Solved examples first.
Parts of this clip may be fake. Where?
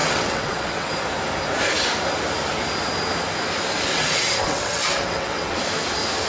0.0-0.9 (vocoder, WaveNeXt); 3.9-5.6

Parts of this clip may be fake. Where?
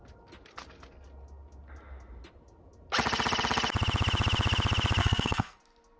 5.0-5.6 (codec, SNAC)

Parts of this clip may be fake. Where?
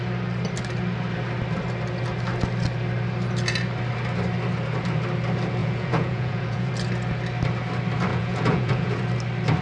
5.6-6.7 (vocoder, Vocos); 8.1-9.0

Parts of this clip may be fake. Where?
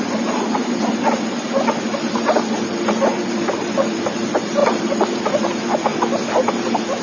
0.0-5.9 (vocoder, BigVGAN v2)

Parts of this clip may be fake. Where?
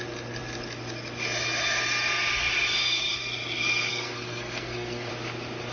3.9-5.1 (codec, SNAC)